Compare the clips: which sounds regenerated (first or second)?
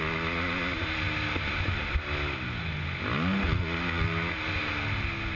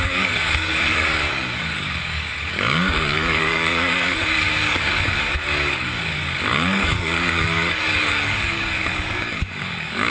second